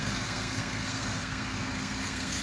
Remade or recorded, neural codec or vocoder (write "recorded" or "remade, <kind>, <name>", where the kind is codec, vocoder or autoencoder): remade, codec, SNAC